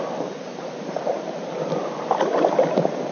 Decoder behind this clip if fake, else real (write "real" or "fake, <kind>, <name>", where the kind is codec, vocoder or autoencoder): real